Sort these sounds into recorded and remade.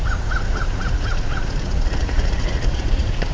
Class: remade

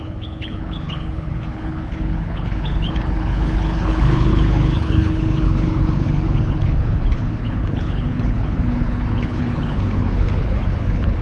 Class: remade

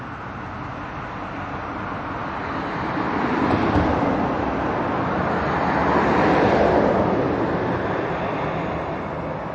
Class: recorded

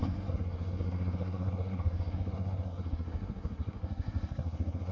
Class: remade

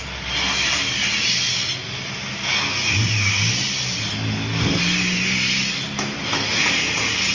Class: recorded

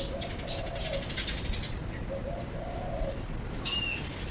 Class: recorded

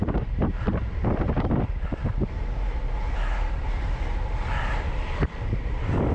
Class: recorded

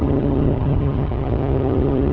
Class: remade